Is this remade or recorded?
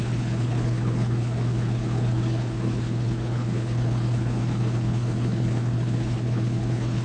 remade